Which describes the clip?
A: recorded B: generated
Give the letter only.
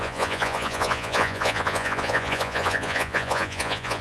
B